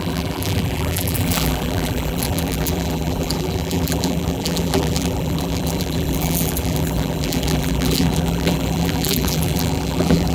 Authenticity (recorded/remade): remade